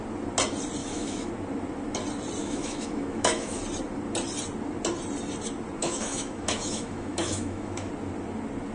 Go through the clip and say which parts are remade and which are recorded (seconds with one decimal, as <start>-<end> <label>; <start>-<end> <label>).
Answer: 0.0-0.8 recorded; 0.8-1.3 remade; 1.3-2.4 recorded; 2.4-3.6 remade; 3.6-5.8 recorded; 5.8-7.9 remade; 7.9-8.7 recorded